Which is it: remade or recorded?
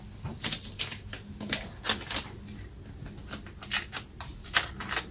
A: recorded